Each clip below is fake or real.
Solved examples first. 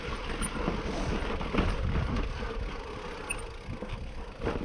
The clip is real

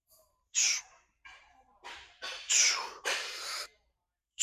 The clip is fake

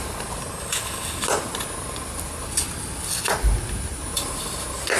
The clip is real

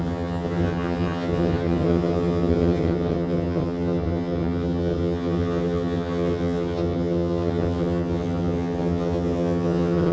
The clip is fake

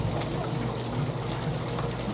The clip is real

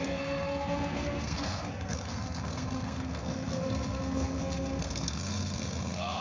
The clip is fake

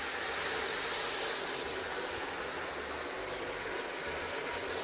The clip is real